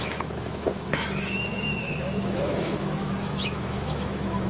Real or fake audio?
fake